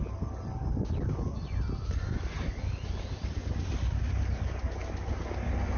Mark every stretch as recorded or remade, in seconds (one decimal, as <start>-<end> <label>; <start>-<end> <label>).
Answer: 0.0-5.8 recorded